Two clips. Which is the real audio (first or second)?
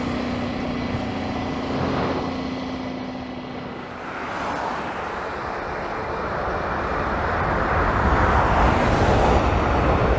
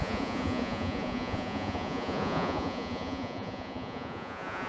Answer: first